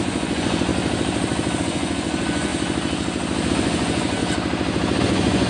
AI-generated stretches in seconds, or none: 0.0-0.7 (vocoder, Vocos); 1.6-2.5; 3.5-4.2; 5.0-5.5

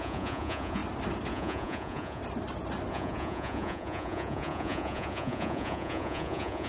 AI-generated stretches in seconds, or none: 0.0-0.8 (vocoder, Vocos); 1.3-2.2; 2.9-6.7

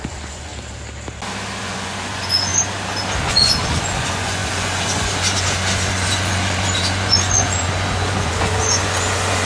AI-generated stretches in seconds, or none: 0.0-0.5 (vocoder, Vocos); 1.6-2.5; 3.2-9.5